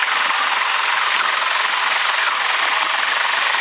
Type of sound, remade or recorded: recorded